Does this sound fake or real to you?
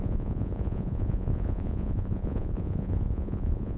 fake